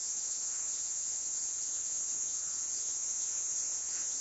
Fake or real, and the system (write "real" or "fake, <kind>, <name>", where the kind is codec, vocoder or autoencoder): fake, vocoder, Vocos